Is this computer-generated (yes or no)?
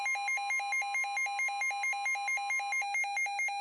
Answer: no